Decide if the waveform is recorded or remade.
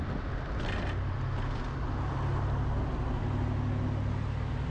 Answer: recorded